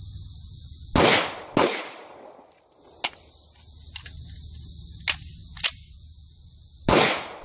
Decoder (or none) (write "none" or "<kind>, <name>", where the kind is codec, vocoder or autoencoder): none